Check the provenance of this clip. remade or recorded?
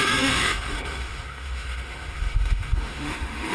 remade